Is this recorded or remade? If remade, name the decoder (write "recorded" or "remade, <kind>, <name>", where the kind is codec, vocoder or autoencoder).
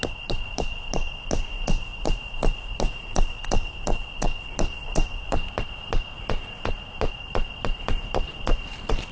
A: recorded